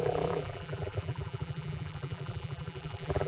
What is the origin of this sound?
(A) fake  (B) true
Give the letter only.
A